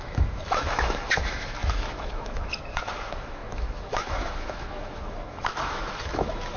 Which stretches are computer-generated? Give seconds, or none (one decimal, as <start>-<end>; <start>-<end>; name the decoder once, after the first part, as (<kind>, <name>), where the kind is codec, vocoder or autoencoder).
0.0-6.6 (autoencoder, DAC-VAE)